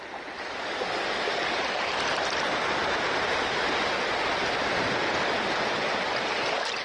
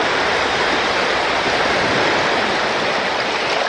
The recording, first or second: first